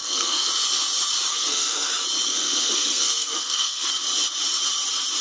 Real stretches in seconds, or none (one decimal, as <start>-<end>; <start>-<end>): 0.5-1.3; 1.9-2.3; 3.9-5.2